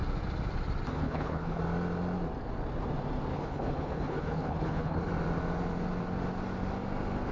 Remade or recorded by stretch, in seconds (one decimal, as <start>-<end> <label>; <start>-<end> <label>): 0.0-0.9 recorded; 0.9-1.6 remade; 1.6-3.3 recorded; 3.3-5.1 remade; 5.1-7.3 recorded